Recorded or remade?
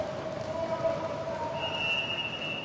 recorded